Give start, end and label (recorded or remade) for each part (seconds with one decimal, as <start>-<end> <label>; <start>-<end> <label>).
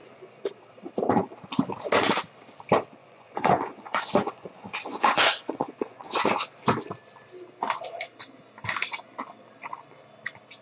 0.0-0.5 remade; 0.5-3.0 recorded; 3.0-6.2 remade; 6.2-10.6 recorded